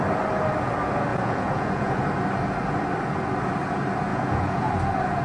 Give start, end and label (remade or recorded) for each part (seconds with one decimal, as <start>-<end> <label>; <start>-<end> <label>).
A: 0.0-1.1 recorded; 1.1-2.1 remade; 2.1-4.1 recorded; 4.1-4.7 remade; 4.7-5.2 recorded